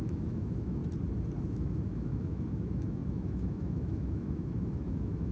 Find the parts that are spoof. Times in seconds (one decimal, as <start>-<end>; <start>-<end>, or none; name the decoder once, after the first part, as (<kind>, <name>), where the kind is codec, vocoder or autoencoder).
0.0-0.8 (autoencoder, DAC-VAE); 1.4-5.3